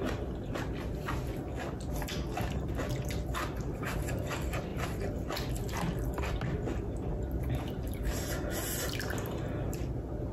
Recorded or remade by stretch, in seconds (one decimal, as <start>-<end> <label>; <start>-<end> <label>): 0.0-10.3 recorded